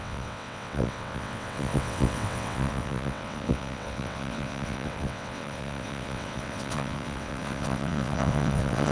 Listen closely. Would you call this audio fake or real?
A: fake